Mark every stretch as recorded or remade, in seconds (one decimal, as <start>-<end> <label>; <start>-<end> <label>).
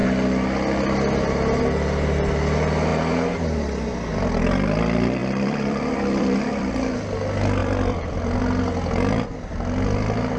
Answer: 0.0-5.2 recorded; 5.2-6.7 remade; 6.7-7.6 recorded; 7.6-8.4 remade; 8.4-10.4 recorded